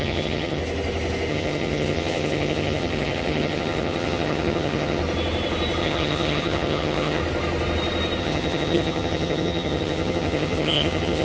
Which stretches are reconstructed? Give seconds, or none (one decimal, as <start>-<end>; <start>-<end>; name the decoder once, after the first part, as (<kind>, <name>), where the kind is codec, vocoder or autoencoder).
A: 0.0-0.6 (vocoder, HiFi-GAN); 1.3-5.0; 5.8-7.2; 8.2-11.2